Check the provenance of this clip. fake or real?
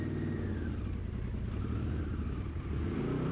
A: real